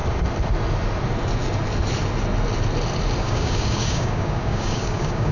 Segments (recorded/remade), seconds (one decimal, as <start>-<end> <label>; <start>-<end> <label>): 0.0-3.2 recorded; 3.2-5.3 remade